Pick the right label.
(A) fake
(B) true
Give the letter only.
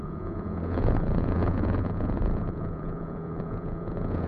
A